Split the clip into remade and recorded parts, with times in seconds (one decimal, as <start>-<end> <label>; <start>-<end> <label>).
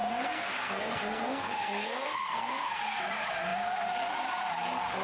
0.0-3.0 remade; 3.0-5.0 recorded